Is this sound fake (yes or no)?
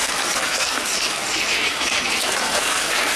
yes